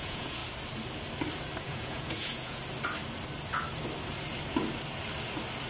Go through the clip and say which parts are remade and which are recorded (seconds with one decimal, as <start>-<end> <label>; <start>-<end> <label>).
0.0-0.4 remade; 0.4-1.6 recorded; 1.6-2.6 remade; 2.6-5.7 recorded